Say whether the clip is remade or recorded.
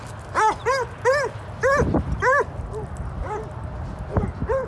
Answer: recorded